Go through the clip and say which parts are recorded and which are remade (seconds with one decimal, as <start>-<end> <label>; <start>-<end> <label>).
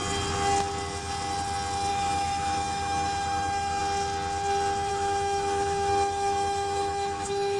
0.0-1.9 recorded; 1.9-3.8 remade; 3.8-4.9 recorded; 4.9-7.6 remade